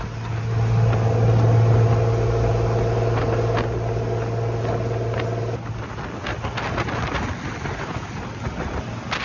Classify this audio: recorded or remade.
recorded